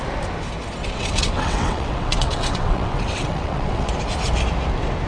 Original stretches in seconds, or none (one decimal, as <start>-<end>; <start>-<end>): 0.0-0.8; 3.9-5.1